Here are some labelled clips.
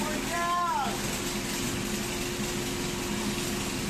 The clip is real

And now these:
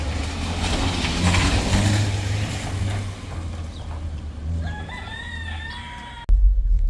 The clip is real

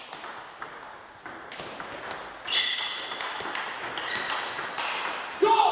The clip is real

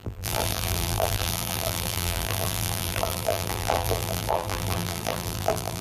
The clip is fake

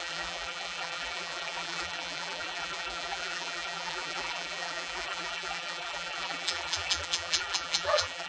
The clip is fake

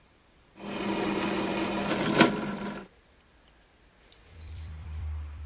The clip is fake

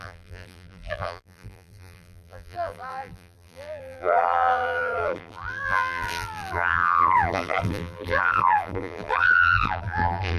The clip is fake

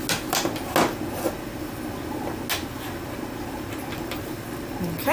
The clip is real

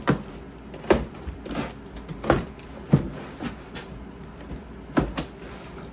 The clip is real